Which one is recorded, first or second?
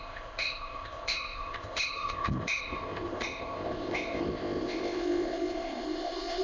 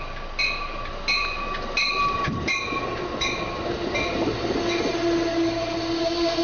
second